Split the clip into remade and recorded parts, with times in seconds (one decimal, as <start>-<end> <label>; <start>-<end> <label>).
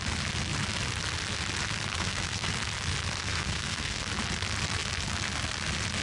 0.0-1.9 recorded; 1.9-2.5 remade; 2.5-3.2 recorded; 3.2-4.0 remade; 4.0-6.0 recorded